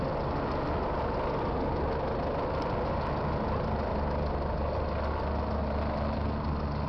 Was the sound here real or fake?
real